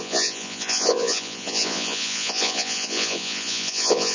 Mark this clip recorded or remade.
remade